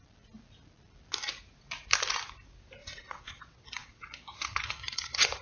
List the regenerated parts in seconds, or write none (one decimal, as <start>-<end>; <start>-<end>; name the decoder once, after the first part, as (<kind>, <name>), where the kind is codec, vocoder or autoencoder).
2.8-5.4 (vocoder, WaveNeXt)